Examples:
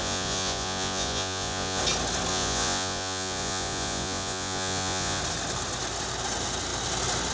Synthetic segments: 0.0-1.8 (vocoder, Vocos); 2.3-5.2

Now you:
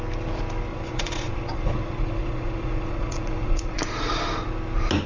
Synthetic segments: 0.7-3.8 (vocoder, Vocos)

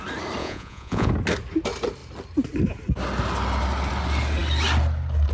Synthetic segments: 0.4-1.1 (vocoder, Vocos)

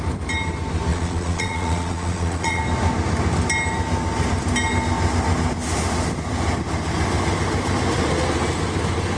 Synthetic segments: 0.9-2.6 (vocoder, Vocos)

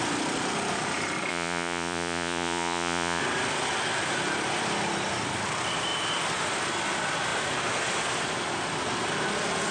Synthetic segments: 1.3-3.2 (vocoder, Vocos)